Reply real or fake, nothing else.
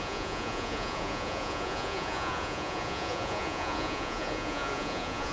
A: fake